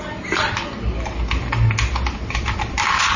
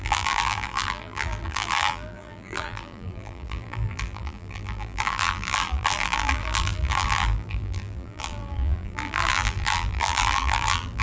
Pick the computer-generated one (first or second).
second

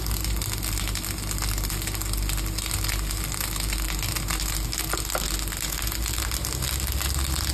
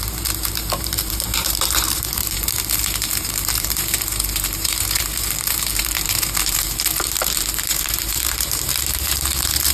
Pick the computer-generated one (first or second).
second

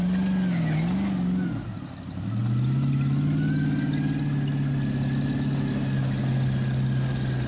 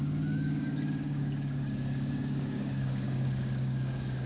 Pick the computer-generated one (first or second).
second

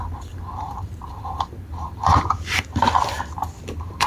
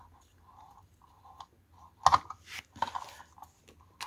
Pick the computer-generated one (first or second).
first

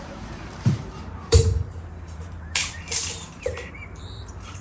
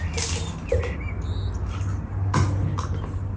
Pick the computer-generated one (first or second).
first